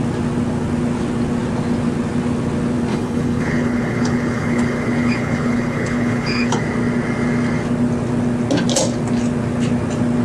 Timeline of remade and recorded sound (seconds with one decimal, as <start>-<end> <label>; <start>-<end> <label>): 0.0-2.9 recorded; 2.9-6.6 remade; 6.6-10.2 recorded